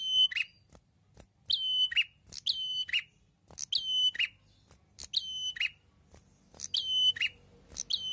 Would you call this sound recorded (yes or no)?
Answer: yes